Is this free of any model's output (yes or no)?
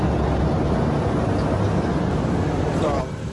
yes